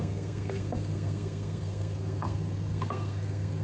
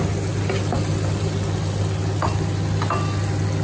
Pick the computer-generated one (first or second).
first